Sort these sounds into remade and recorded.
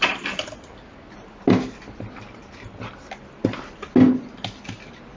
recorded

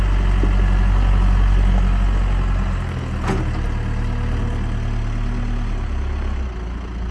recorded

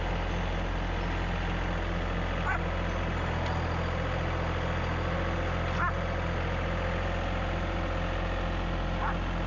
recorded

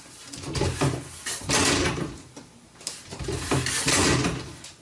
recorded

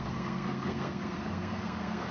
remade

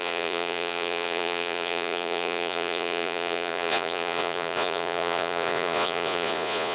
remade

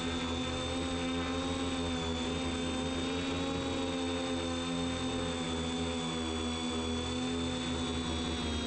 recorded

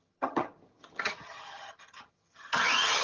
remade